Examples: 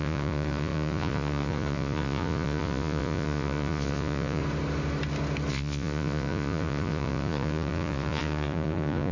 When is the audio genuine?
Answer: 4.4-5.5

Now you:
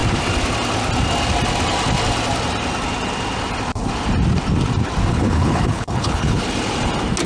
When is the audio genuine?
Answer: 0.0-5.1; 6.4-7.3

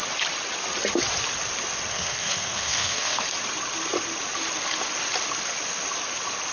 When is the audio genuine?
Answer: 0.0-1.9; 3.2-6.5

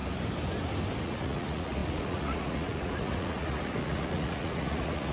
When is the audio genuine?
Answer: 0.0-1.0

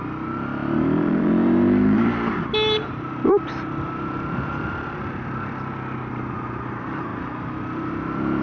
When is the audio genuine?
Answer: 0.0-0.6; 5.1-7.1; 7.9-8.4

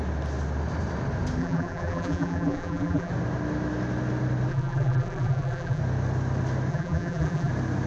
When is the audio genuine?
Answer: 0.0-1.4; 3.1-4.5; 5.8-6.7; 7.5-7.9